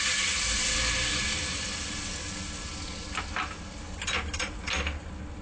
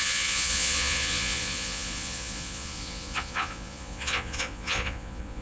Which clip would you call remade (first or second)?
second